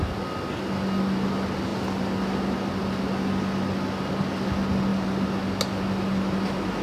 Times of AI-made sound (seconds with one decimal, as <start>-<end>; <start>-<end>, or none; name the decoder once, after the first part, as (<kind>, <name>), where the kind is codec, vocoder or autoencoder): none